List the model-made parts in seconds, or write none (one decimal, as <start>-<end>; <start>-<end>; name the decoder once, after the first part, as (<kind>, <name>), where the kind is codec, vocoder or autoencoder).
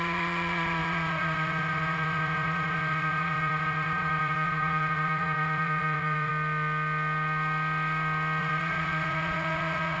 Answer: 0.0-6.3 (vocoder, Vocos); 8.4-10.0